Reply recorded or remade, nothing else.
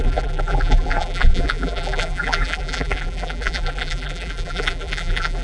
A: remade